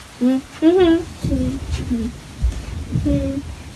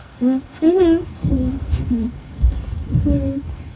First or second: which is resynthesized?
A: second